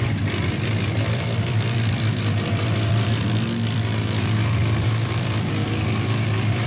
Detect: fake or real fake